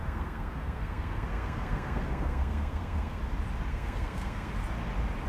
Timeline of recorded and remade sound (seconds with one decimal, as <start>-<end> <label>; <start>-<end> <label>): 0.0-3.2 remade; 3.2-3.7 recorded; 3.7-4.5 remade; 4.5-5.3 recorded

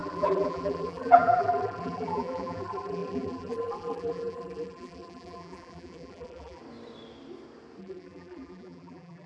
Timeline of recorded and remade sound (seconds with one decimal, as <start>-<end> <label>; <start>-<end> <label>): 0.0-6.6 remade; 6.6-7.8 recorded; 7.8-9.3 remade

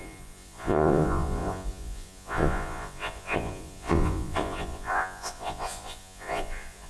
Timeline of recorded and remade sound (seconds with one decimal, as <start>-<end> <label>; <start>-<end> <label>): 0.0-6.9 remade

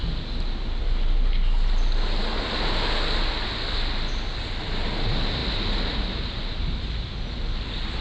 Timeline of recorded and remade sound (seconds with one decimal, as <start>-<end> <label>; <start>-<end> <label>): 0.0-8.0 recorded

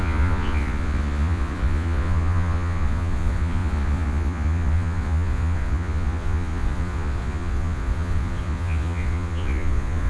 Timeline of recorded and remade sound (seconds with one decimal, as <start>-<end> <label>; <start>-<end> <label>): 0.0-10.1 remade

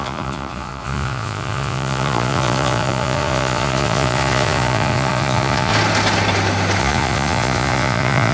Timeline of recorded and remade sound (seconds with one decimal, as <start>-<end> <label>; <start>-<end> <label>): 0.0-5.7 remade; 5.7-6.8 recorded; 6.8-8.3 remade